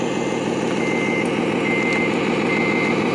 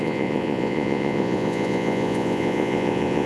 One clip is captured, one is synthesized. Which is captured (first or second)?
first